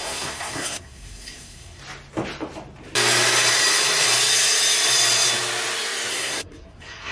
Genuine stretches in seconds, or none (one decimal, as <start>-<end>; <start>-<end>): 1.8-6.1